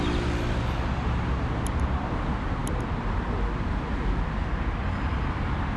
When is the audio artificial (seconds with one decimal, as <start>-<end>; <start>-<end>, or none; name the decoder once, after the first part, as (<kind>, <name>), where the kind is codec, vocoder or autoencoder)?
none